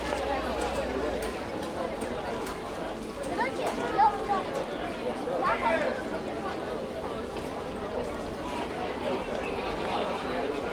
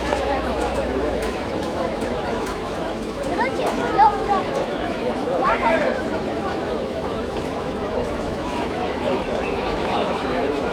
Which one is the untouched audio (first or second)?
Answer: first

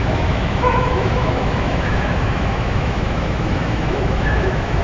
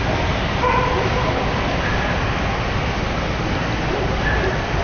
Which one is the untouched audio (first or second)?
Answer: second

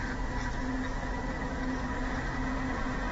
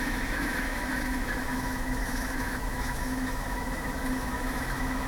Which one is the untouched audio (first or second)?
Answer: first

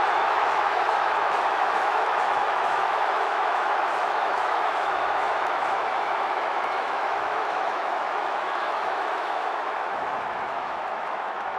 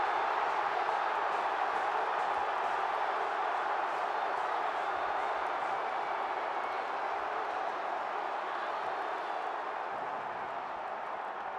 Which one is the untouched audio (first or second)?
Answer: second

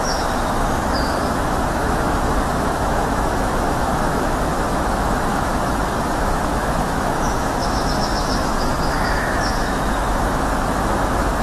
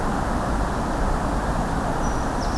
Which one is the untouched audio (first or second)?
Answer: second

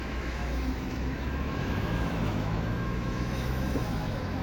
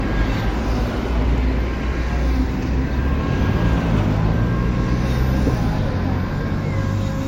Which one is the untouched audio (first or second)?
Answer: second